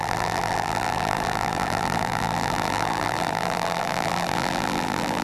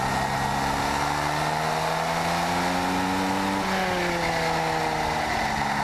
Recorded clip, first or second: second